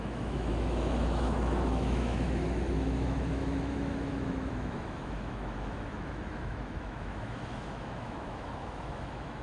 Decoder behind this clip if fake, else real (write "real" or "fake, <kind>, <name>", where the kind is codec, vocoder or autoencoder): fake, autoencoder, DAC-VAE